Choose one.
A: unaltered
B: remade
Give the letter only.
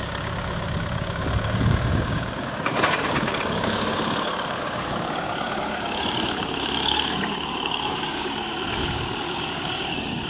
B